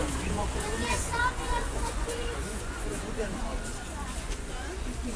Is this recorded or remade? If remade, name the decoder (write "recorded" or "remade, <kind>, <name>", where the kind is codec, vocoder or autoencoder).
remade, vocoder, Vocos